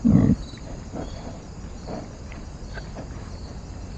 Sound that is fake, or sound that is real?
real